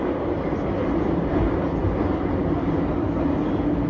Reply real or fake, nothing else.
fake